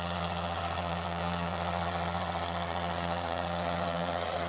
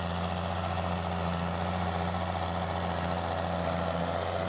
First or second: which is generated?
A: first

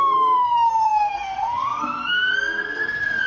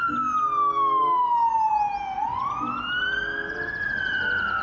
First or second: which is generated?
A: first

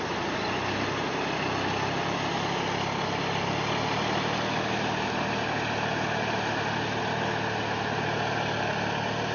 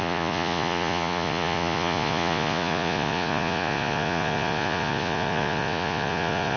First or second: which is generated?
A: second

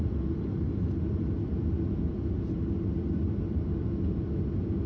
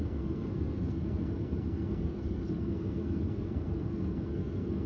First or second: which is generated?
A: second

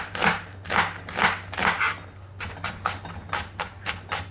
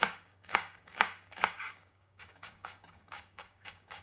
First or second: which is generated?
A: second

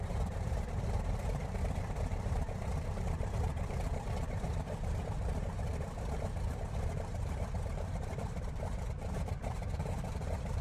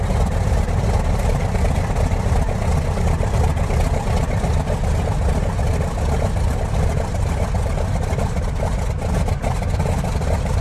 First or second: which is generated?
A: first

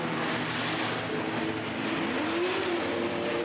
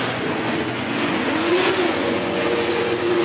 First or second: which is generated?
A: second